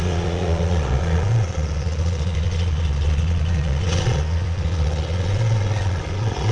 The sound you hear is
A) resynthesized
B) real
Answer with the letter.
A